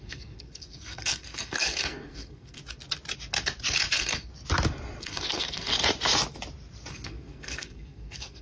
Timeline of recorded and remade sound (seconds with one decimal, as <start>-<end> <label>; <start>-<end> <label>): 0.0-2.6 remade; 2.6-3.9 recorded; 3.9-4.3 remade; 4.3-5.0 recorded; 5.0-5.7 remade; 5.7-6.9 recorded; 6.9-8.4 remade